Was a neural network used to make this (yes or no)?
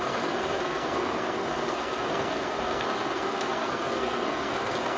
yes